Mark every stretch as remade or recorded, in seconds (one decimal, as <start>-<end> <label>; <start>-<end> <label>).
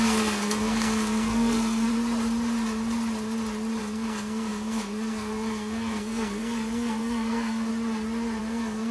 0.0-1.9 remade; 1.9-3.8 recorded; 3.8-7.7 remade; 7.7-8.4 recorded; 8.4-8.9 remade